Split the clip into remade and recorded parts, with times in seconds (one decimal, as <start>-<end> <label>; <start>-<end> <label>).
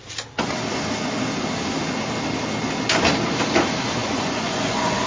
0.0-4.0 recorded; 4.0-5.1 remade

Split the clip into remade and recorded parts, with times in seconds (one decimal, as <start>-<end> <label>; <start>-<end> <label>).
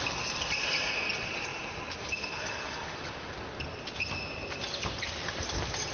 0.0-5.9 recorded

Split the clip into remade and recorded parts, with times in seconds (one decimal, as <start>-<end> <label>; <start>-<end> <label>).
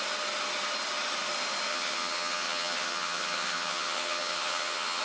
0.0-1.7 recorded; 1.7-5.0 remade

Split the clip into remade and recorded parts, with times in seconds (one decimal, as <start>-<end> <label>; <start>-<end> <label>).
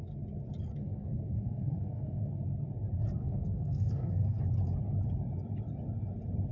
0.0-0.7 recorded; 0.7-2.3 remade; 2.3-3.2 recorded; 3.2-4.4 remade; 4.4-6.5 recorded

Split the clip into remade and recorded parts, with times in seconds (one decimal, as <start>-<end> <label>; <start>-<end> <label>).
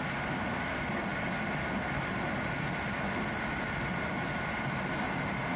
0.0-5.6 recorded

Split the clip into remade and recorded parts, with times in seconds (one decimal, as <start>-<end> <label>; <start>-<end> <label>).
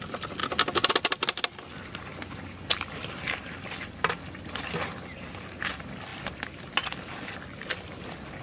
0.0-8.4 recorded